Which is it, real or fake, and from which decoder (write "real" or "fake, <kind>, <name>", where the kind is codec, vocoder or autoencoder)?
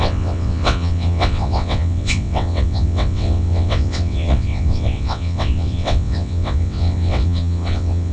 fake, vocoder, WaveNeXt